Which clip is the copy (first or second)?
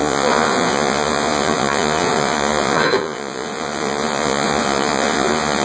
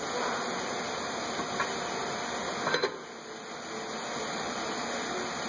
first